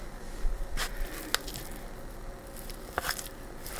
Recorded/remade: recorded